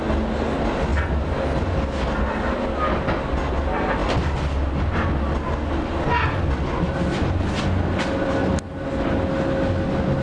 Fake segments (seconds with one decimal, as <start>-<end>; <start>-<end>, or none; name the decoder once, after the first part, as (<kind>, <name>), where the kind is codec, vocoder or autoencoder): none